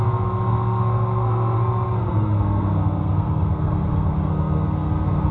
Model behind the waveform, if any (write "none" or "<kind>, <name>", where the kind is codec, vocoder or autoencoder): codec, SNAC